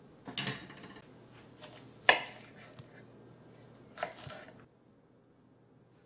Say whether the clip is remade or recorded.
recorded